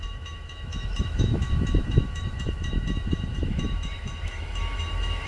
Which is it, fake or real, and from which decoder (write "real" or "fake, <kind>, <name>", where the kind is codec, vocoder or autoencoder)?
fake, autoencoder, DAC-VAE